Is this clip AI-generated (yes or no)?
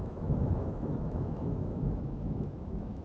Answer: yes